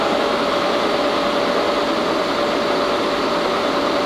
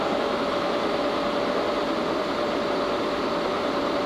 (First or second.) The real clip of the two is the first